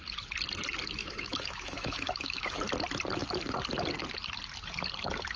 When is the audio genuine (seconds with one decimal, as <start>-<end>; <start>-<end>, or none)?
0.0-1.0; 2.6-5.4